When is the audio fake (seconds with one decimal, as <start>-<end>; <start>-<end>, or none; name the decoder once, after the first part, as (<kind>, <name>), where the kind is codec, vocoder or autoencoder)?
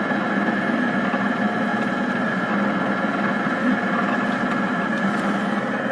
none